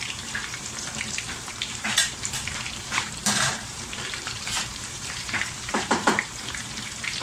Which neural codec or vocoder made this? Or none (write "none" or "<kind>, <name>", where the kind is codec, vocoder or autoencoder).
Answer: vocoder, BigVGAN v2